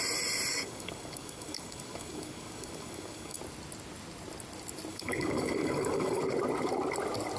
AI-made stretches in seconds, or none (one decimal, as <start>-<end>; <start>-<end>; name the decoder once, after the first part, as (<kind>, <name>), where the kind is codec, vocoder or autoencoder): 0.5-3.4 (codec, DAC); 4.9-6.2